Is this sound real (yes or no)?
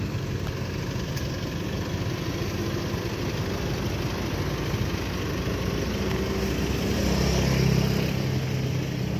yes